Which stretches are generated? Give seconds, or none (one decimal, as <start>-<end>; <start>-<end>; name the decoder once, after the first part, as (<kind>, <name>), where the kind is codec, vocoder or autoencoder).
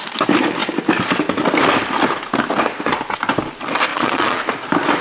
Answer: 3.9-4.4 (vocoder, Vocos)